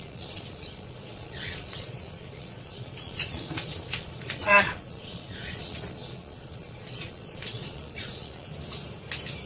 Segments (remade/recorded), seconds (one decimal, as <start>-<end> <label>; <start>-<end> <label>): 0.0-8.5 remade; 8.5-9.5 recorded